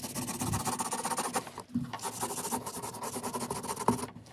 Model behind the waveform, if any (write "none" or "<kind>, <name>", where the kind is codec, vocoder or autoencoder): none